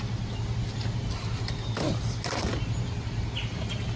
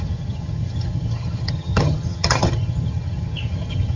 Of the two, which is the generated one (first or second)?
second